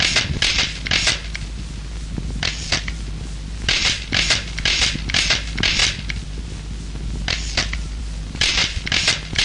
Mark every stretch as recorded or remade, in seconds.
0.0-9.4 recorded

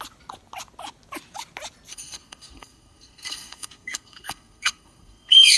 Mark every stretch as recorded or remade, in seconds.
0.0-1.9 recorded; 1.9-5.6 remade

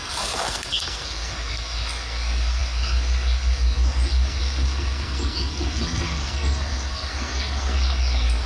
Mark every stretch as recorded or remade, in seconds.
0.0-8.5 remade

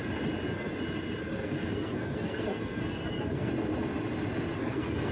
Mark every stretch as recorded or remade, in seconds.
0.0-1.4 recorded; 1.4-3.5 remade; 3.5-4.6 recorded; 4.6-5.1 remade

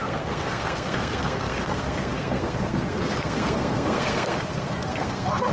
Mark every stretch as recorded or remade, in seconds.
0.0-5.5 remade

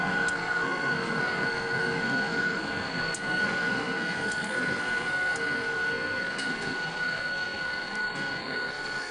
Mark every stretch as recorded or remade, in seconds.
0.0-9.1 remade